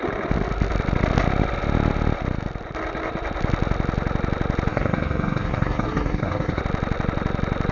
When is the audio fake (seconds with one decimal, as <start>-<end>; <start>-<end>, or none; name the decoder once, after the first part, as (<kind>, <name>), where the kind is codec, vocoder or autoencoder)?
4.7-6.6 (codec, SNAC)